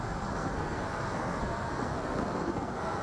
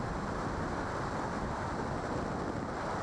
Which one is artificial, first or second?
first